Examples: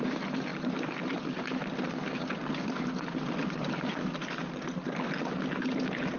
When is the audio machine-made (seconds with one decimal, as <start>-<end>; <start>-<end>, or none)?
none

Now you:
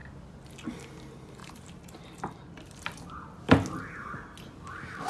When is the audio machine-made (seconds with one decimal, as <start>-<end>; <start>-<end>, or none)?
1.4-3.0

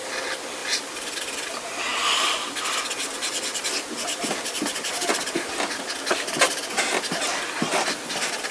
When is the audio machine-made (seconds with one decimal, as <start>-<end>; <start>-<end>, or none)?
0.6-1.5; 1.9-2.4; 3.5-5.7

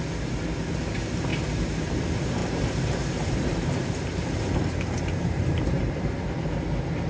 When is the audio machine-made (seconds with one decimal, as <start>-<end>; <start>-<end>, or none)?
1.3-1.8; 2.4-5.9

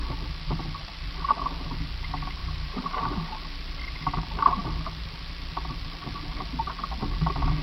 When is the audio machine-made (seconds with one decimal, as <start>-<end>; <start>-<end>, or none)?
2.4-3.0

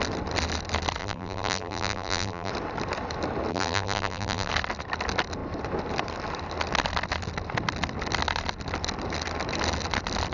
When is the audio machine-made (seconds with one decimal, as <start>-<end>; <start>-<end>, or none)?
1.0-2.5; 3.5-4.5

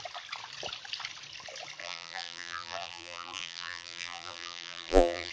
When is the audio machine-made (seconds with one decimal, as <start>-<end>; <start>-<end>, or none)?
1.8-5.3